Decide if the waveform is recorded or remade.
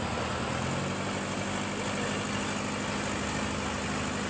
recorded